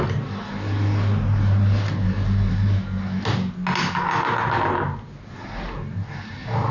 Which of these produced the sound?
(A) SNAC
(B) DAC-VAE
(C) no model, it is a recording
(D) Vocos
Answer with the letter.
C